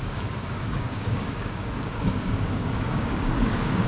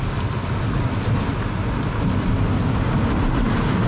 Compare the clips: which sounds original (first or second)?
second